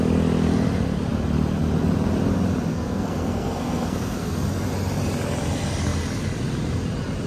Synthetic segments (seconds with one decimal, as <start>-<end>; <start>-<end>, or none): 2.7-4.3